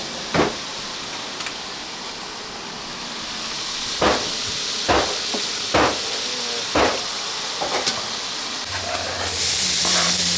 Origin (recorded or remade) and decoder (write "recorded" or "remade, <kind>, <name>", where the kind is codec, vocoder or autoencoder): recorded